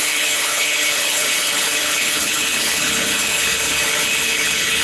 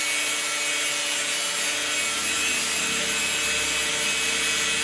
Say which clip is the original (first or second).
second